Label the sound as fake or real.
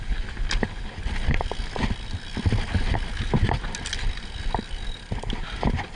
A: real